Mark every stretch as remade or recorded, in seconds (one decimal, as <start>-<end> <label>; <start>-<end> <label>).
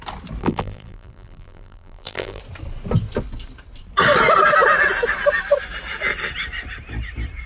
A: 0.0-0.4 recorded; 0.4-2.4 remade; 2.4-7.5 recorded